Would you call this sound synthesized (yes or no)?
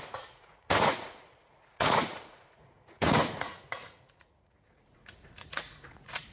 yes